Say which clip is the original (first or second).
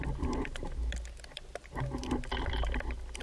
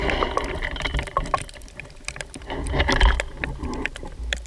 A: first